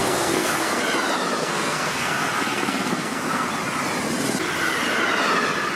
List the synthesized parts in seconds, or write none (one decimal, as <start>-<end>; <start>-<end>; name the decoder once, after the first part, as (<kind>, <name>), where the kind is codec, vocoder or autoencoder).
0.0-0.8 (codec, SNAC); 1.4-3.5